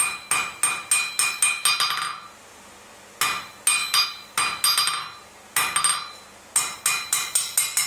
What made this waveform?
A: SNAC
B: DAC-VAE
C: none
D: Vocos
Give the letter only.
C